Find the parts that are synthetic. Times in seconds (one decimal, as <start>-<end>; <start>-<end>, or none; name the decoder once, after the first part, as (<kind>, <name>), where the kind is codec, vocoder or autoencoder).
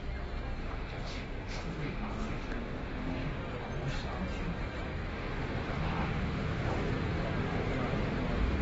0.6-3.4 (autoencoder, DAC-VAE); 5.1-6.9